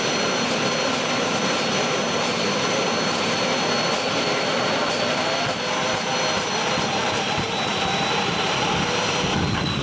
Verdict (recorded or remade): remade